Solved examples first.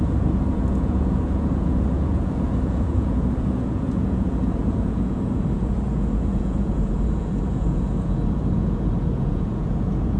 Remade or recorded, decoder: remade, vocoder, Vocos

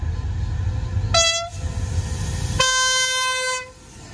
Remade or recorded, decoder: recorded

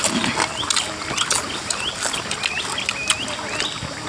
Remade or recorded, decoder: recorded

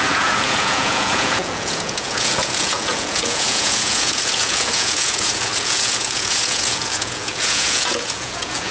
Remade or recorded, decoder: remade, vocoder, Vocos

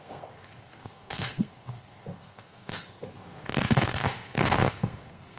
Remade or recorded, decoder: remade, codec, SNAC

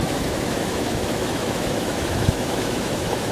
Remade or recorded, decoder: remade, autoencoder, DAC-VAE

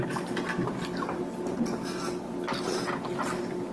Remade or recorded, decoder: recorded